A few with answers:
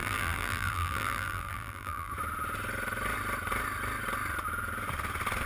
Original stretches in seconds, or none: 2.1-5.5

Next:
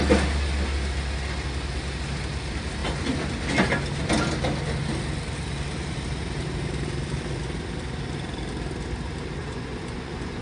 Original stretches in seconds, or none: 0.0-9.4

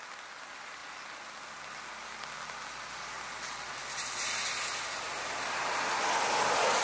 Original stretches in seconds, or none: 0.0-6.8

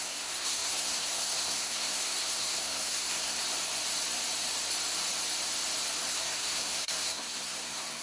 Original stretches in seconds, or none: 3.4-6.0

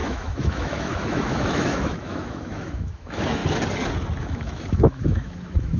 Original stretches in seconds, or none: 3.4-4.2